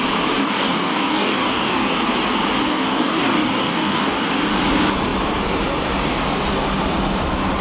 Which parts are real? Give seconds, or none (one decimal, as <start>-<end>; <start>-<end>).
0.0-0.4; 2.1-2.7; 4.3-7.6